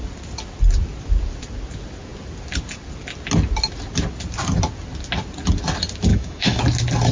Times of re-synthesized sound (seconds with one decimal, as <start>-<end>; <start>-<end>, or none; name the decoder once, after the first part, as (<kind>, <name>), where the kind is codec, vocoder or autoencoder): 6.1-6.6 (autoencoder, DAC-VAE)